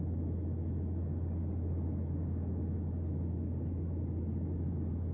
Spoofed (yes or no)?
no